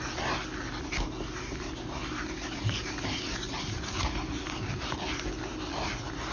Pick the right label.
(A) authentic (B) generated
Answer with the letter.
A